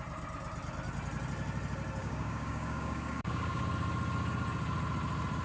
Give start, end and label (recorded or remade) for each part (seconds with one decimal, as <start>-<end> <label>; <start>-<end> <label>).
0.0-2.0 recorded; 2.0-3.6 remade; 3.6-5.4 recorded